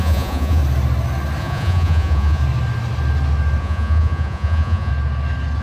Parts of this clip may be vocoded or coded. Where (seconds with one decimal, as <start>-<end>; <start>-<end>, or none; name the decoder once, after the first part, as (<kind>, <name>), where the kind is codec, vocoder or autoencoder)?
0.0-0.6 (vocoder, Vocos); 1.4-2.4; 3.6-4.9

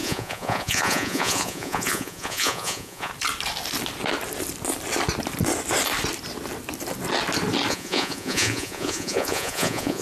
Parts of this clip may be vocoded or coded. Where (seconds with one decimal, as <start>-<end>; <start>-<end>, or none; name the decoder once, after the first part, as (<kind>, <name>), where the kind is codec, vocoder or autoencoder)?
0.0-3.1 (vocoder, Vocos); 7.7-10.0